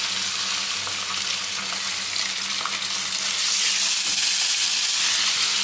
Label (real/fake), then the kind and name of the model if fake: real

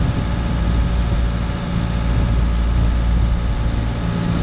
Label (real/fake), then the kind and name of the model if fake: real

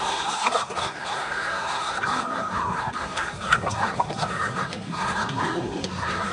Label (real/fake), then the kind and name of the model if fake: fake, codec, SNAC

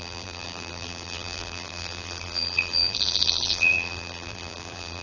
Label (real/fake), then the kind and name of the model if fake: fake, vocoder, BigVGAN v2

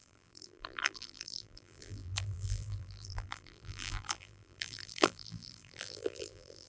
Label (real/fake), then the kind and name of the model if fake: fake, vocoder, BigVGAN v2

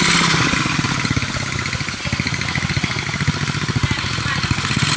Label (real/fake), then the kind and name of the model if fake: real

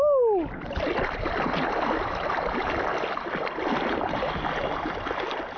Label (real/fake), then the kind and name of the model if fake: real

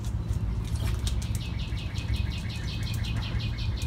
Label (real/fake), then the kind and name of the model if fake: real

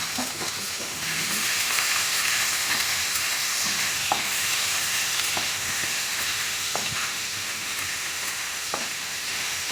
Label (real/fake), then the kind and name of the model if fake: fake, autoencoder, DAC-VAE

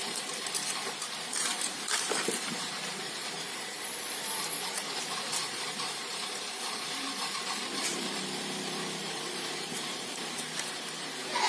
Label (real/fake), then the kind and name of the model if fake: fake, vocoder, BigVGAN v2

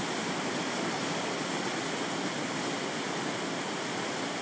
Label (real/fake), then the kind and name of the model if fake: real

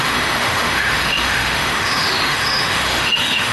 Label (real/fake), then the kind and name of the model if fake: fake, autoencoder, DAC-VAE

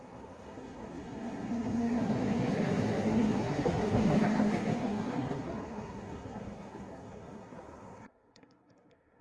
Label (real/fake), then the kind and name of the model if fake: fake, codec, SNAC